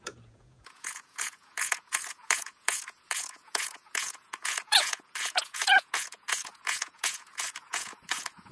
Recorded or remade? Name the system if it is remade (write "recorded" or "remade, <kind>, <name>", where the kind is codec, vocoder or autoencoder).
remade, vocoder, Vocos